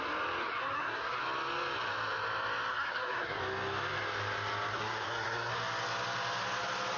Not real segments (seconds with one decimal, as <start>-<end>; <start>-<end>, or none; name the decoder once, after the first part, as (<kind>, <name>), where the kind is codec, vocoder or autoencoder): 0.4-1.2 (codec, SNAC); 2.7-3.4; 4.7-5.5